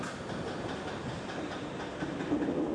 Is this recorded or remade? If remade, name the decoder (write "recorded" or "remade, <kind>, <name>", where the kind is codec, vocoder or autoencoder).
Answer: remade, vocoder, BigVGAN v2